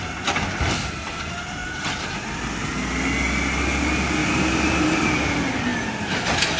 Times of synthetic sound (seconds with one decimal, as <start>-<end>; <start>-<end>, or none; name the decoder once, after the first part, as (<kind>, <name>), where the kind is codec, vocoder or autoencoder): 1.6-2.4 (vocoder, BigVGAN v2); 4.2-5.1